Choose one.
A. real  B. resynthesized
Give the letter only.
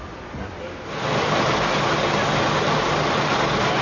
A